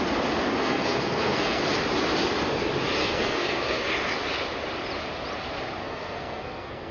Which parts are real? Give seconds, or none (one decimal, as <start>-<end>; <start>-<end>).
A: 0.0-0.6; 1.6-3.0; 3.9-5.8